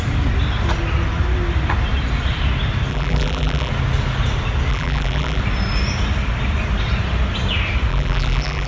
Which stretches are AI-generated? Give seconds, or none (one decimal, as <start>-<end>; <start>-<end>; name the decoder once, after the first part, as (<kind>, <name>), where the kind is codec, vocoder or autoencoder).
2.9-3.7 (vocoder, BigVGAN v2); 4.7-5.4; 7.9-8.7